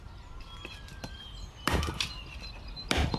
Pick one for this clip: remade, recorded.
remade